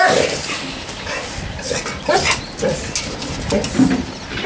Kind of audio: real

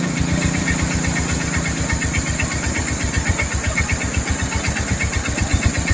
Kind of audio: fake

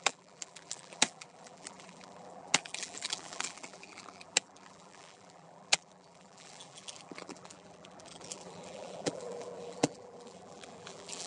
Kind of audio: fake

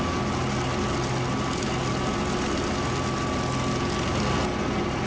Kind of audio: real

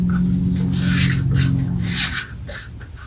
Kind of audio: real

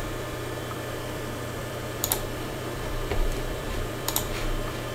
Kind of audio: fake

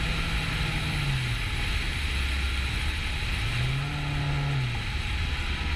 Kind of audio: real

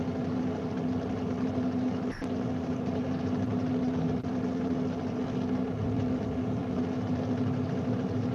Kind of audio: fake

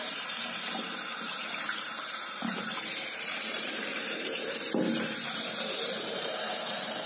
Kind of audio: fake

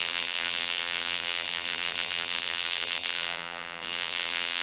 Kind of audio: fake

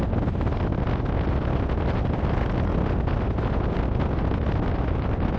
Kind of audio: real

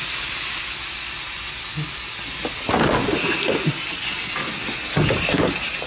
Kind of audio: real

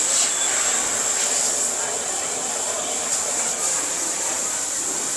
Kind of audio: real